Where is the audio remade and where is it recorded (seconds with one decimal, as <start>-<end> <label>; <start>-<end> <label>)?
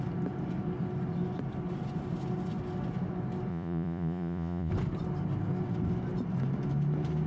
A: 0.0-3.5 recorded; 3.5-4.7 remade; 4.7-7.3 recorded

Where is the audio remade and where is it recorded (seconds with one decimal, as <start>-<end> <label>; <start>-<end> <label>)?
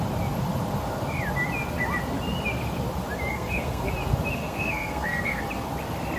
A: 0.0-3.3 recorded; 3.3-3.9 remade; 3.9-4.4 recorded; 4.4-5.4 remade; 5.4-6.2 recorded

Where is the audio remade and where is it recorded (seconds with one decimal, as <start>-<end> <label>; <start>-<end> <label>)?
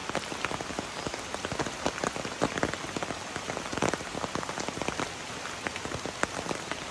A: 0.0-6.9 recorded